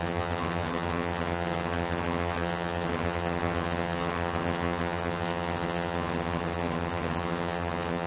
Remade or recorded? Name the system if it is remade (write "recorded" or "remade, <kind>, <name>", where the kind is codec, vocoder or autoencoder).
remade, vocoder, HiFi-GAN